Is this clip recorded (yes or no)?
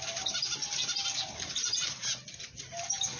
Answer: yes